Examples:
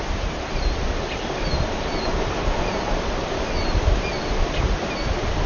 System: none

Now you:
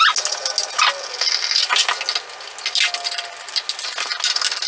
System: none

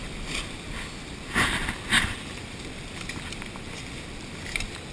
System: none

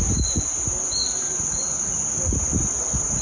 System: none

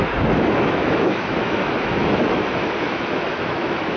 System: autoencoder, DAC-VAE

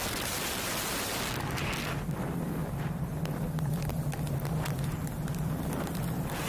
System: none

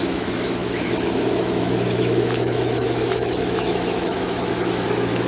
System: autoencoder, DAC-VAE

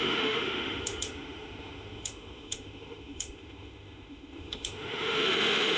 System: autoencoder, DAC-VAE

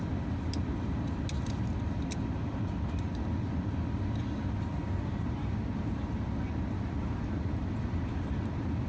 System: none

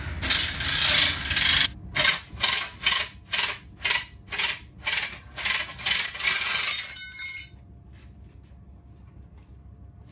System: none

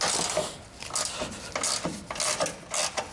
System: none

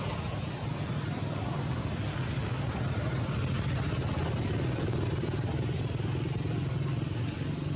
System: none